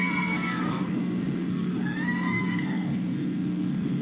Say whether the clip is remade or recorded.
remade